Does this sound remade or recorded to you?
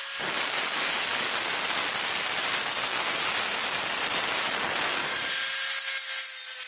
recorded